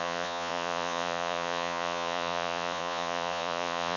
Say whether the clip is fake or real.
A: fake